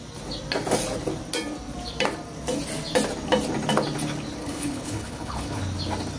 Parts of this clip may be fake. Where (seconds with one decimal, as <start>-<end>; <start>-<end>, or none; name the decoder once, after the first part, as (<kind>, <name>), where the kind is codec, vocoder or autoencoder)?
4.4-5.6 (codec, HILCodec)